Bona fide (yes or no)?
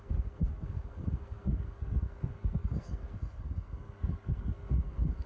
no